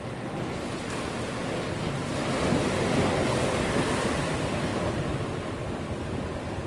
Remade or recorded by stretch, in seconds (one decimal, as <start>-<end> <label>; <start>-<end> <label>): 0.0-6.7 recorded